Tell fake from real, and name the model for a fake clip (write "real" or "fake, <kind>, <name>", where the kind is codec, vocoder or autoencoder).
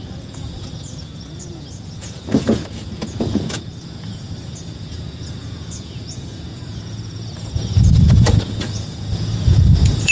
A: fake, vocoder, Vocos